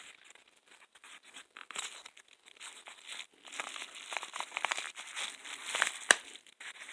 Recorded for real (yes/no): yes